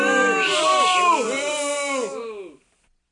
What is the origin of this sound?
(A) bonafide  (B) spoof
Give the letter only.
A